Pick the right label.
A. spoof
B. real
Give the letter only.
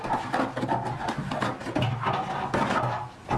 B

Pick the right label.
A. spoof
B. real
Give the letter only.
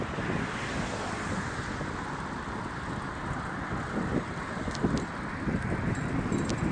B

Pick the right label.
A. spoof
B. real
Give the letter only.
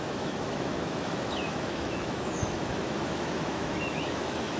A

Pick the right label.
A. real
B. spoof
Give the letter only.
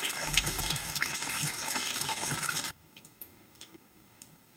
B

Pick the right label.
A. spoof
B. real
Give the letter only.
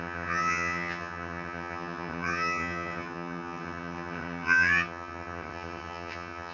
A